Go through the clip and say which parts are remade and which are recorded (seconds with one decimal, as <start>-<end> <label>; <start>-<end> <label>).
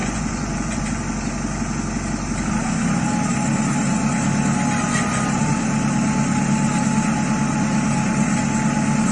0.0-0.8 remade; 0.8-9.1 recorded